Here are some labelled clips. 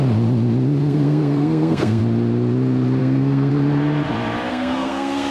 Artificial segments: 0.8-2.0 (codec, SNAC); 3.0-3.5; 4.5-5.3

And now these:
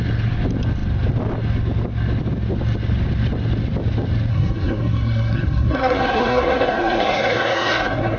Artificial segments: 4.3-8.2 (codec, SNAC)

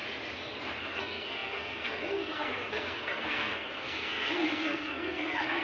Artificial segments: 0.8-5.6 (codec, SNAC)

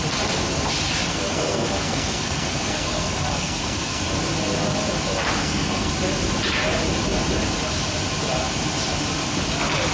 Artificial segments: 1.1-4.0 (codec, SNAC); 5.4-5.9